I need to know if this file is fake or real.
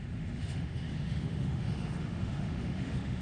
fake